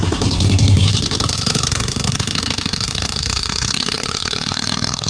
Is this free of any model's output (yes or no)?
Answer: no